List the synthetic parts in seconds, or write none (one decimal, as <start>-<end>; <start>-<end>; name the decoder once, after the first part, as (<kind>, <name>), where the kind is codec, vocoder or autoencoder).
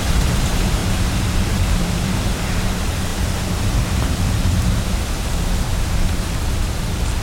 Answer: none